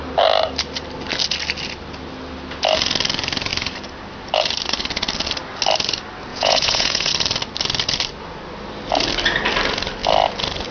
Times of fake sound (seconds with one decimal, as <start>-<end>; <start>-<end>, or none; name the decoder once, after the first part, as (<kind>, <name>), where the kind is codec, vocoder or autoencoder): 6.3-7.1 (vocoder, Vocos)